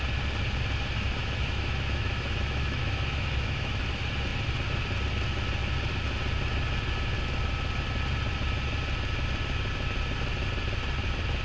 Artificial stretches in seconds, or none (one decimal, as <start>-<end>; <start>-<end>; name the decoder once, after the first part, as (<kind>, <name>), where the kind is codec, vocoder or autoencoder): 1.2-3.8 (autoencoder, DAC-VAE)